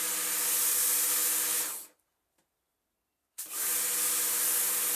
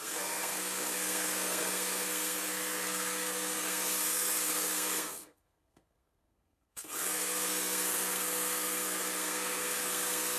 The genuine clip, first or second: first